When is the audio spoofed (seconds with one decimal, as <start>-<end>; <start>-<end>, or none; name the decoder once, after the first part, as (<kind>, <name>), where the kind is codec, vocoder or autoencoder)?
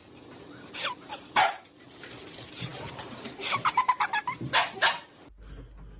2.7-3.9 (vocoder, BigVGAN v2)